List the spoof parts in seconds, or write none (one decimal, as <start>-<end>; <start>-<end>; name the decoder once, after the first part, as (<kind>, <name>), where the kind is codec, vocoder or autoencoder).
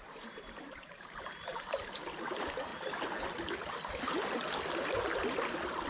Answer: 0.0-2.7 (vocoder, BigVGAN v2)